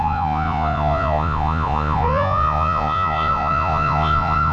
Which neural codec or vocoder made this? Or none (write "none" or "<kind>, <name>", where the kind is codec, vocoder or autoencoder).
vocoder, Vocos